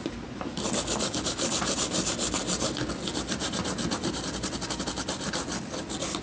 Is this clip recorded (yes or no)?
yes